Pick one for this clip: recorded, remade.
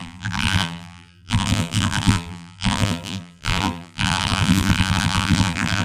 remade